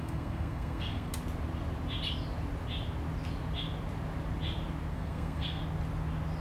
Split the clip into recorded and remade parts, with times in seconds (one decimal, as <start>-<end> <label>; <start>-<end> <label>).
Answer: 0.0-1.1 remade; 1.1-4.9 recorded; 4.9-5.6 remade; 5.6-6.4 recorded